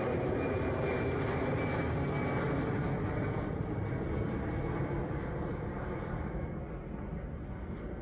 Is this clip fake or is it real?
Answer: real